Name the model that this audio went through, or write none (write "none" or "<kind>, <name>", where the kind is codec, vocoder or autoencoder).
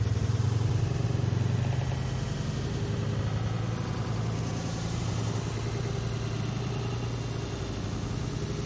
none